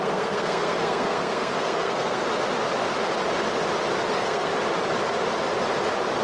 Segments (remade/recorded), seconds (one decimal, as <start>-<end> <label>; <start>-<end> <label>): 0.0-2.2 remade; 2.2-4.1 recorded; 4.1-4.5 remade; 4.5-6.2 recorded